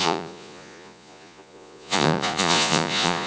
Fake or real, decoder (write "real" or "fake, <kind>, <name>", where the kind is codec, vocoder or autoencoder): fake, vocoder, Vocos